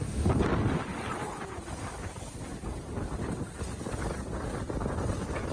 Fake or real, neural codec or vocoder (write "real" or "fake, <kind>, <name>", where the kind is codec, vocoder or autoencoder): real